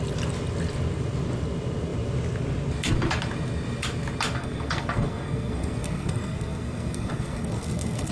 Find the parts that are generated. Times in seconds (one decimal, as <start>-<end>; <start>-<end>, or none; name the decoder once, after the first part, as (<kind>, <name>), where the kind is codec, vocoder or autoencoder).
4.4-8.1 (codec, SNAC)